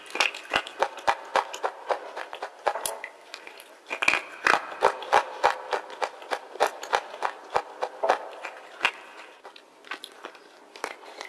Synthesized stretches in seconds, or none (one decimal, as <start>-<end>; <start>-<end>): none